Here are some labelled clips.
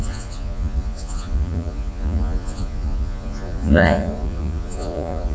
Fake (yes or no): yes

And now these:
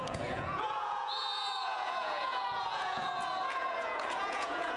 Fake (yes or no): yes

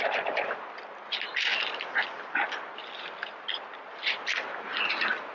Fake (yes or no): no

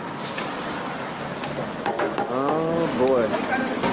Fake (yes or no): no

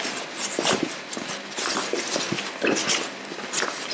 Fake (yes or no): no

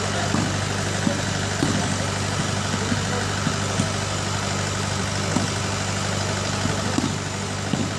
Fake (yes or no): no